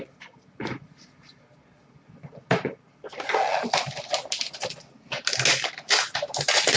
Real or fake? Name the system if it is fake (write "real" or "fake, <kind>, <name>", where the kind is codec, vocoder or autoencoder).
real